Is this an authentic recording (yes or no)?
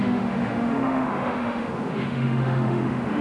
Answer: no